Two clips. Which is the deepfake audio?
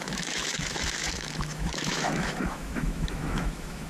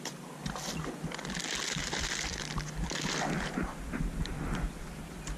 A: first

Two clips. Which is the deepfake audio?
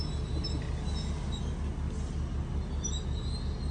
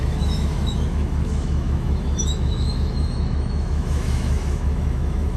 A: second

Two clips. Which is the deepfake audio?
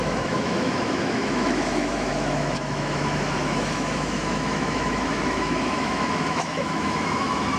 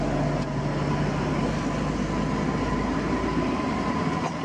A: first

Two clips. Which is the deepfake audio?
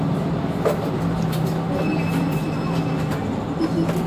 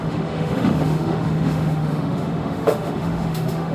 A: second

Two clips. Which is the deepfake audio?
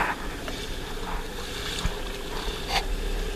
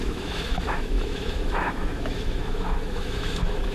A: second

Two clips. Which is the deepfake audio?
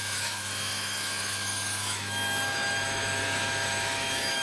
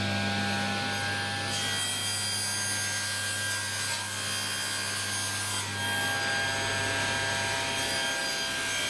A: first